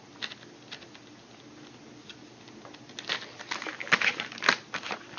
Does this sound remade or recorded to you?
recorded